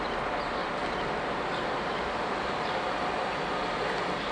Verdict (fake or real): real